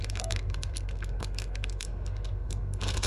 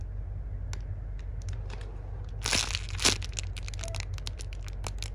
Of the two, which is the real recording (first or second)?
second